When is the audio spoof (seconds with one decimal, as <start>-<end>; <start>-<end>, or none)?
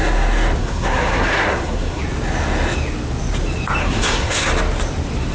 0.6-2.0; 3.8-4.5